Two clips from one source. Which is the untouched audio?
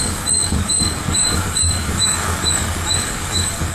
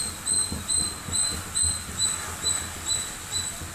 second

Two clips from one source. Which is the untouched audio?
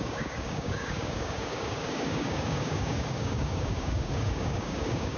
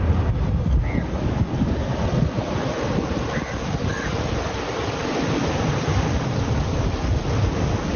second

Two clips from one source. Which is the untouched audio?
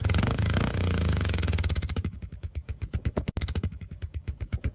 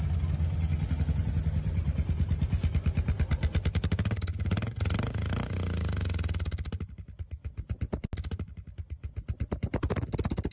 second